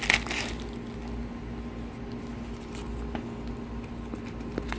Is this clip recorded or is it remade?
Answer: recorded